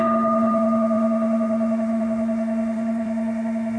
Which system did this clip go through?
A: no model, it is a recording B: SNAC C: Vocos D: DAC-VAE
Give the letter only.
D